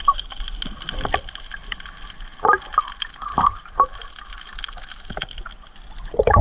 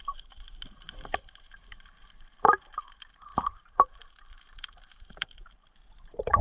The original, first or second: first